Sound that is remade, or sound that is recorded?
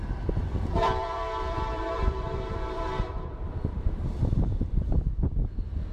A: remade